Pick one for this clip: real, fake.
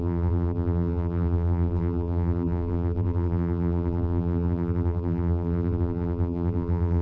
fake